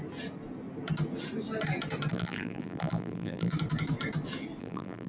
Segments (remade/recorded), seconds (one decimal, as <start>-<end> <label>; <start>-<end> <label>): 0.0-2.1 recorded; 2.1-3.5 remade; 3.5-4.6 recorded; 4.6-5.1 remade